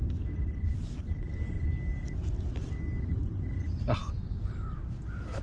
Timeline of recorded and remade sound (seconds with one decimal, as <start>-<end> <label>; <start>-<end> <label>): 0.0-5.4 recorded